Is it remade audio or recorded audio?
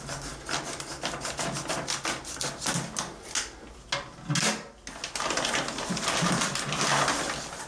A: recorded